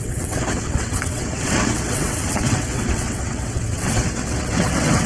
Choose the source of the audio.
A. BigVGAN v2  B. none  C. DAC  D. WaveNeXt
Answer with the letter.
D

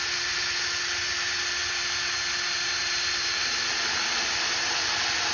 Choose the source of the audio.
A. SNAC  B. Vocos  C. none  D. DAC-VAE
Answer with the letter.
C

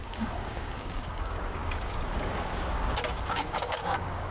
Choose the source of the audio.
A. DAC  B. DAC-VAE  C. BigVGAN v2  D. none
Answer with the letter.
A